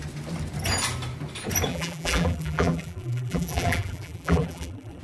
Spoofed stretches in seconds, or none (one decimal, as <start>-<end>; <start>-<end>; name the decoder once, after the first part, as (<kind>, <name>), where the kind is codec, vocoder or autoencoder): 1.7-5.0 (vocoder, BigVGAN v2)